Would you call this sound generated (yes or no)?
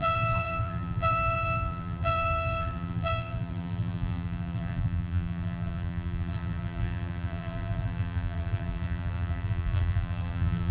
yes